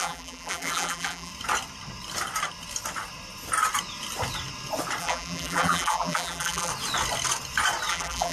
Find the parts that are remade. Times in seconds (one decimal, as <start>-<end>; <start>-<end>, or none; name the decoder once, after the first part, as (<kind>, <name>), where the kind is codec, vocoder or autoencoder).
0.0-1.3 (vocoder, BigVGAN v2); 5.0-6.7; 7.9-8.3